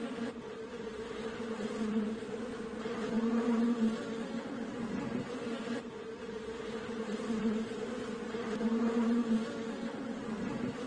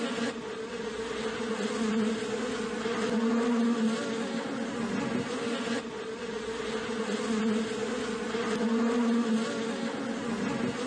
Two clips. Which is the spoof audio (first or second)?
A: first